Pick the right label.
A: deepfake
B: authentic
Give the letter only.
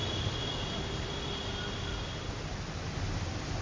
B